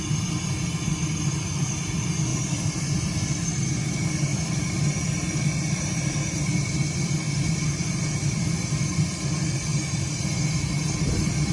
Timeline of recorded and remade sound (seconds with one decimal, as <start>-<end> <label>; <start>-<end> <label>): 0.0-1.0 recorded; 1.0-1.6 remade; 1.6-2.3 recorded; 2.3-3.5 remade; 3.5-4.3 recorded; 4.3-7.3 remade; 7.3-11.5 recorded